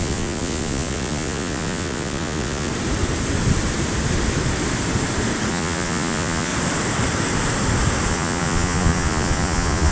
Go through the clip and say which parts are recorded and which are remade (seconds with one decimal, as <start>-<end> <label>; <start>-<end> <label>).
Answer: 0.0-2.7 remade; 2.7-5.5 recorded; 5.5-6.5 remade; 6.5-8.1 recorded; 8.1-9.9 remade